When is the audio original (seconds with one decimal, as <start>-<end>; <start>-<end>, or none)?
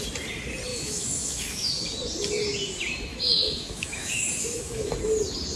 0.0-0.7; 1.7-3.1; 4.9-5.6